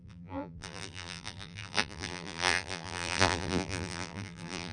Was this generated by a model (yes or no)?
yes